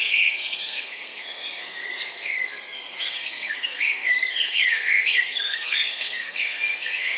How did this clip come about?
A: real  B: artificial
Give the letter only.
B